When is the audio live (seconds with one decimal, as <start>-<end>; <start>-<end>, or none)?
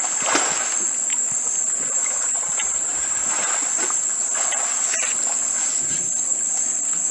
0.0-2.0; 3.7-5.6; 6.2-7.1